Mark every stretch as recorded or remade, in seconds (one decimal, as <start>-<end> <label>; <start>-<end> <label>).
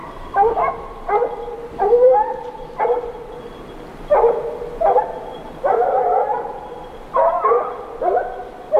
0.0-5.0 remade; 5.0-6.2 recorded; 6.2-7.0 remade; 7.0-8.8 recorded